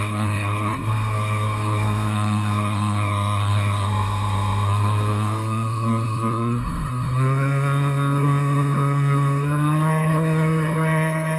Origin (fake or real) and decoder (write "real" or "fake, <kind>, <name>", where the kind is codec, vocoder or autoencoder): fake, codec, SNAC